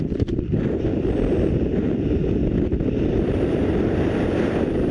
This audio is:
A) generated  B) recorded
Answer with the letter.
A